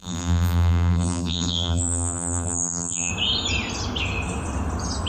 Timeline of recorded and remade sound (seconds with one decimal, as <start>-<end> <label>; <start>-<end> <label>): 0.0-3.1 remade; 3.1-5.1 recorded